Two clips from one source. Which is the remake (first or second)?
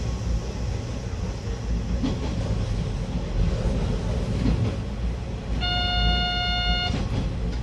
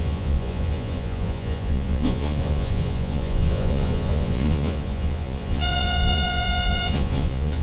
second